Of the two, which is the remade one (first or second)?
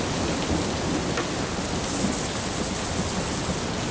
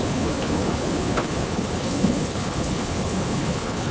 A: second